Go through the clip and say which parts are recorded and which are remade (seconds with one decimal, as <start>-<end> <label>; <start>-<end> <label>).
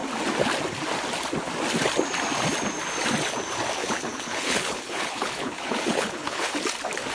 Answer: 0.0-3.8 recorded; 3.8-6.5 remade; 6.5-7.1 recorded